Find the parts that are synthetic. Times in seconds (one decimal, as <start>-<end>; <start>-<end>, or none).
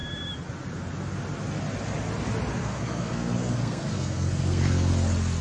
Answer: 2.6-4.9